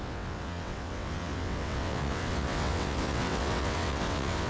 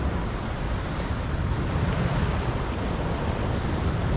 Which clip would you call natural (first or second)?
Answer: second